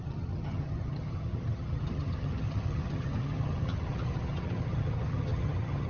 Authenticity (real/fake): fake